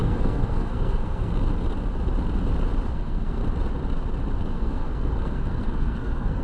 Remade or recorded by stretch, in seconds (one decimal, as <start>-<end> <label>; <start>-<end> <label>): 0.0-1.3 remade; 1.3-2.9 recorded; 2.9-3.4 remade; 3.4-4.4 recorded; 4.4-6.4 remade